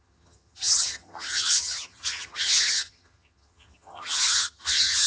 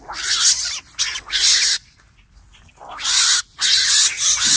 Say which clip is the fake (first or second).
first